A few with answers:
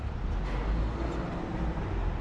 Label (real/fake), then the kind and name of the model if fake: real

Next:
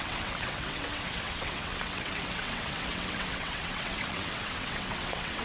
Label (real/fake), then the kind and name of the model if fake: fake, vocoder, WaveNeXt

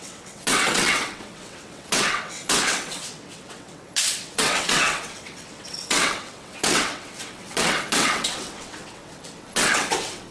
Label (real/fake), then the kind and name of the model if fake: fake, vocoder, WaveNeXt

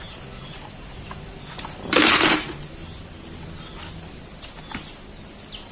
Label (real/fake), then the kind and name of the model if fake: real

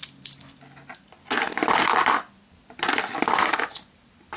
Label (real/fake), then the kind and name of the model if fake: real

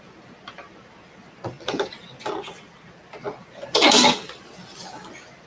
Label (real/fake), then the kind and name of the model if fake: real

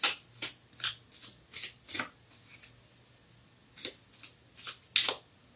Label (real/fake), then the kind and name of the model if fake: real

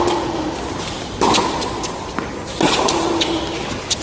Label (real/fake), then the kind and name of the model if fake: real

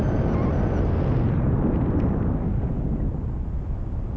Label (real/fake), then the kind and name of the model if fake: real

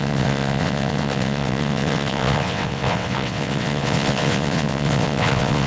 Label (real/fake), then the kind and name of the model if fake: fake, vocoder, WaveNeXt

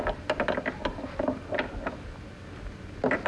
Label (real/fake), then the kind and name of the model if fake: real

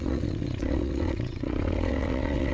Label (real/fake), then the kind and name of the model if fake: fake, vocoder, WaveNeXt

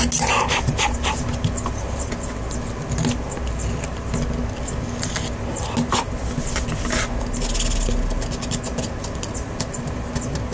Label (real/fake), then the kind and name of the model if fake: real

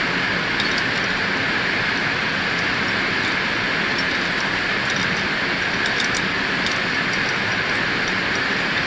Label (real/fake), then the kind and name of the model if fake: real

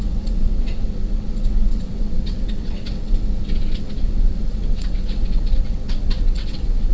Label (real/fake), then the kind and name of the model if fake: fake, vocoder, WaveNeXt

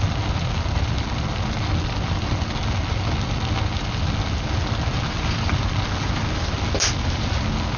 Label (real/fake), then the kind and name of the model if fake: real